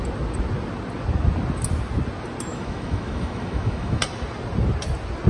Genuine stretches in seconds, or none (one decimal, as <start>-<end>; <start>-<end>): 0.0-2.5; 4.0-5.3